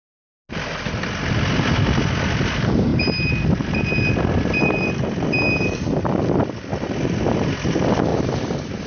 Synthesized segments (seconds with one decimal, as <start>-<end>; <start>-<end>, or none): 6.7-7.3; 8.1-8.9